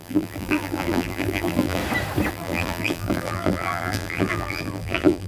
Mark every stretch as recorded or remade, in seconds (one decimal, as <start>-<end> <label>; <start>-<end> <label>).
0.0-1.8 remade; 1.8-2.3 recorded; 2.3-5.3 remade